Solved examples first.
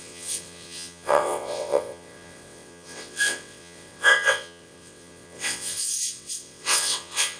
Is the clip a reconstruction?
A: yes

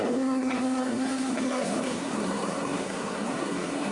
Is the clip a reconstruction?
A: yes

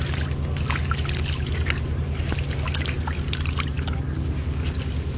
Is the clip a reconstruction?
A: no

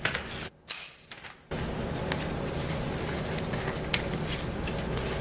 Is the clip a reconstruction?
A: no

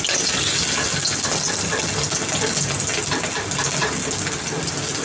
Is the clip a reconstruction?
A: no